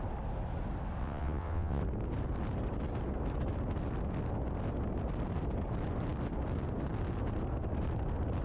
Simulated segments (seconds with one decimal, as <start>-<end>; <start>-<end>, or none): 1.0-1.8